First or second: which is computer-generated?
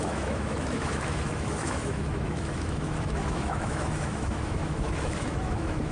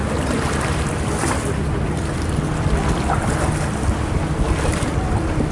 first